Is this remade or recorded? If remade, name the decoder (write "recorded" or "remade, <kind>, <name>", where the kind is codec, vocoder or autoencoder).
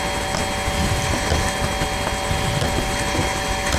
recorded